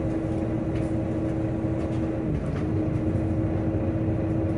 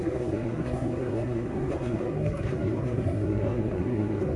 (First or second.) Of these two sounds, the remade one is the second